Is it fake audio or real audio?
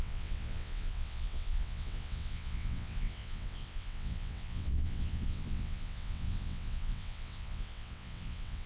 fake